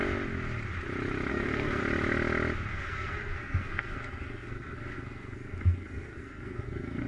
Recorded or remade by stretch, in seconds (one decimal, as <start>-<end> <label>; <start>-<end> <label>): 0.0-1.3 recorded; 1.3-1.8 remade; 1.8-2.7 recorded; 2.7-7.1 remade